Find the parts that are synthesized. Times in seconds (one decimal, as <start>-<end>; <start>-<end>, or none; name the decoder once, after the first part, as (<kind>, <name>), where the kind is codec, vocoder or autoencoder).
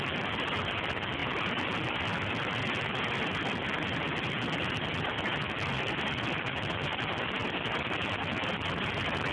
none